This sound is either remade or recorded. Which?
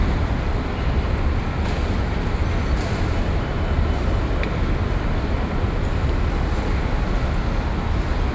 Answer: recorded